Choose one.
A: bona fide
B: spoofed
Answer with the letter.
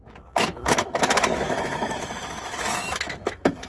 B